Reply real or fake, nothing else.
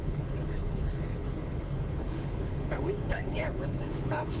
fake